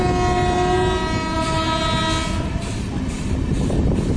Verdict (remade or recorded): recorded